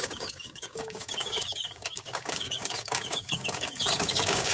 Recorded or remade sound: remade